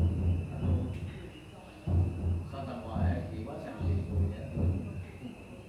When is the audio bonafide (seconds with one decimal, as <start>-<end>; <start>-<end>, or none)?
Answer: 0.0-3.0; 4.1-5.7